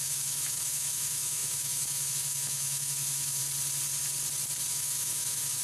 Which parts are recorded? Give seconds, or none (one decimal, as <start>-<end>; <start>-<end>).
3.4-4.7